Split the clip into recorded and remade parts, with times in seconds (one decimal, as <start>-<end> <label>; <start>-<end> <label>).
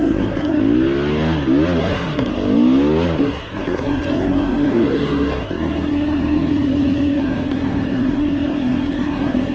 0.0-0.6 remade; 0.6-1.8 recorded; 1.8-2.3 remade; 2.3-3.2 recorded; 3.2-9.5 remade